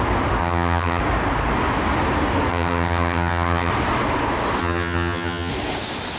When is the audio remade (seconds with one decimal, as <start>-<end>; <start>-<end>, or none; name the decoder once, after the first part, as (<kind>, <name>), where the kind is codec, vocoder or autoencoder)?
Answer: 0.4-1.0 (vocoder, HiFi-GAN); 2.5-3.7; 4.6-5.5